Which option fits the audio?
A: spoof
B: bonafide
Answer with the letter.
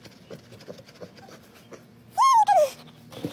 B